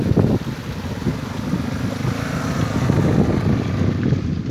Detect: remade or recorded recorded